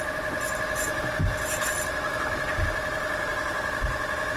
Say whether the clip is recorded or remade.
remade